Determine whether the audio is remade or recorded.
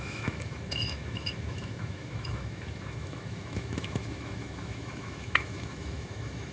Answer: remade